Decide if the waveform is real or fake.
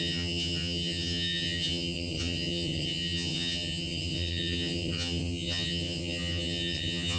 fake